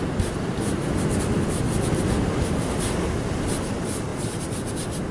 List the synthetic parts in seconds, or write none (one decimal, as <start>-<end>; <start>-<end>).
none